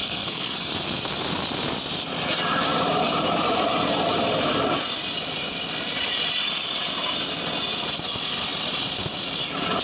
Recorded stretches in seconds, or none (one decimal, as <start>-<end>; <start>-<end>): 0.7-9.8